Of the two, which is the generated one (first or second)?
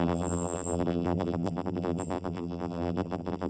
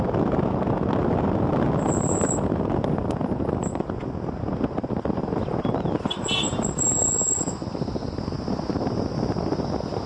first